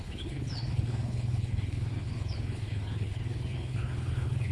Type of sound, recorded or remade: remade